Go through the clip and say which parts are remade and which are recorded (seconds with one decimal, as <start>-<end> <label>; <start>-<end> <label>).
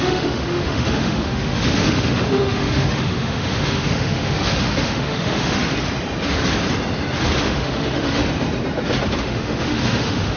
0.0-5.6 remade; 5.6-7.4 recorded; 7.4-8.2 remade; 8.2-9.2 recorded; 9.2-10.4 remade